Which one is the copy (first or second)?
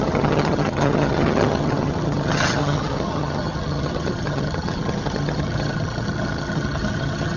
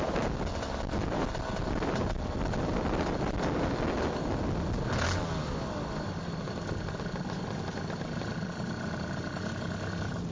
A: first